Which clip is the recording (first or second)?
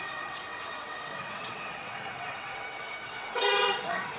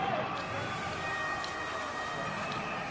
second